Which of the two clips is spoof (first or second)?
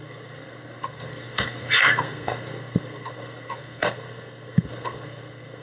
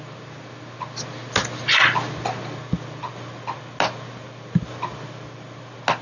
first